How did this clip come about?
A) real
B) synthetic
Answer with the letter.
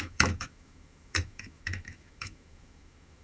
B